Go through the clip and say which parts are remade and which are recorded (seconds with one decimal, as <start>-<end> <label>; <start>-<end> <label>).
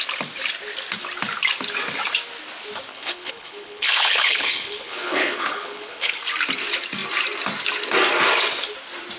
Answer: 0.0-2.9 recorded; 2.9-6.2 remade; 6.2-9.2 recorded